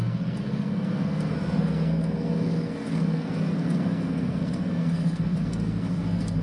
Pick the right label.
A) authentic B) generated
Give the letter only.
B